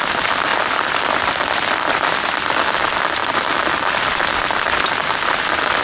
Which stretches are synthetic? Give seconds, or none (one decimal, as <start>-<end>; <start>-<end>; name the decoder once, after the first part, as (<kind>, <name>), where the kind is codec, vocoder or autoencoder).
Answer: 0.5-2.8 (vocoder, BigVGAN v2)